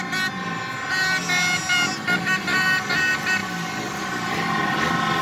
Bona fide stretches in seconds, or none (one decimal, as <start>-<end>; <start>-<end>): 0.0-5.2